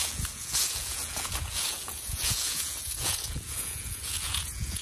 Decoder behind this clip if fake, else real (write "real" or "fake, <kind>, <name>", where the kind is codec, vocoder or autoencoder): fake, vocoder, Vocos